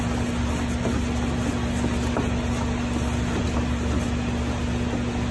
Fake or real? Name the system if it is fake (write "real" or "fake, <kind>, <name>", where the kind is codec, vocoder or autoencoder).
real